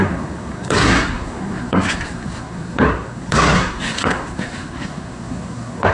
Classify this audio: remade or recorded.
remade